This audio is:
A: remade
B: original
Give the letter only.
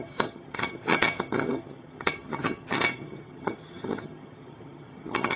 A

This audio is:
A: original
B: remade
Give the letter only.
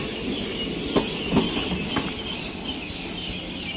A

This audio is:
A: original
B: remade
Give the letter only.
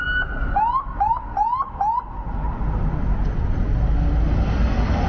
A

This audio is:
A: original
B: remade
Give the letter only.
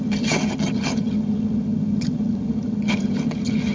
B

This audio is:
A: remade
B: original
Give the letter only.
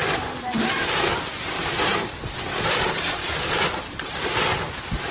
B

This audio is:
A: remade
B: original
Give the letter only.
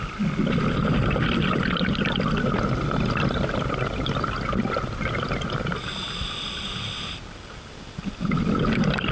B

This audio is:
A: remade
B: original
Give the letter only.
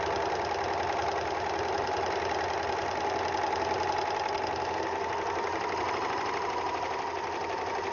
B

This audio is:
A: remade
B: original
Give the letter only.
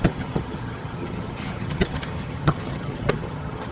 A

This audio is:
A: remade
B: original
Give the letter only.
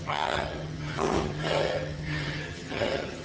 A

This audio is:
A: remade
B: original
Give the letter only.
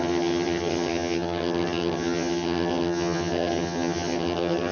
A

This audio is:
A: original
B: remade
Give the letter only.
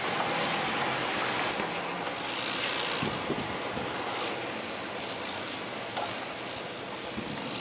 A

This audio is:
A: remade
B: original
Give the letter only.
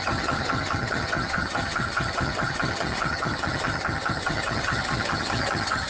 A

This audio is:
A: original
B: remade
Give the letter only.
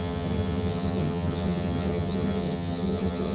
B